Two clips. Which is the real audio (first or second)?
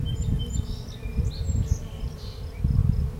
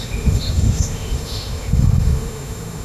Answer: first